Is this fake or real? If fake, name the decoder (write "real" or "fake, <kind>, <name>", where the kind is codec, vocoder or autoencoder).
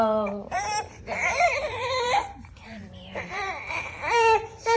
fake, vocoder, BigVGAN v2